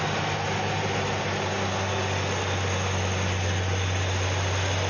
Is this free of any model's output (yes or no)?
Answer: yes